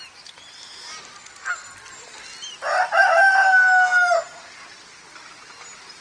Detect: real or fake real